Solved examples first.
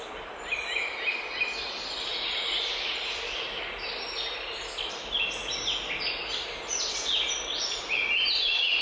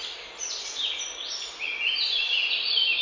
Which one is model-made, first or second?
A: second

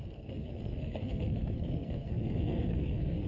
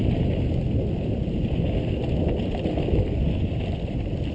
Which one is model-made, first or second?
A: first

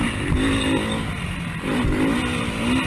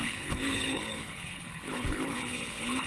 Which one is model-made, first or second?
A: second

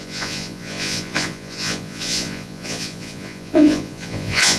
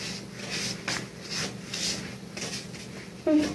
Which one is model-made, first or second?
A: first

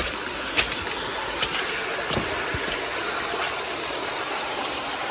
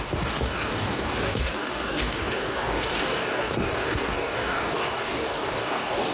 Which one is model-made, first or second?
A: second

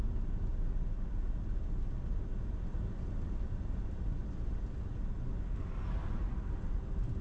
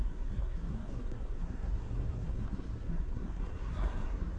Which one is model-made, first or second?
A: second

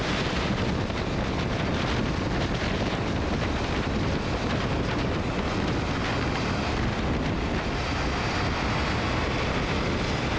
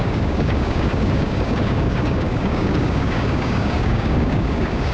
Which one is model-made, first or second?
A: second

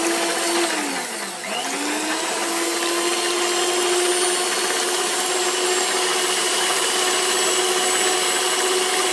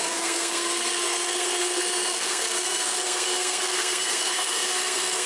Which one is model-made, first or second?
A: second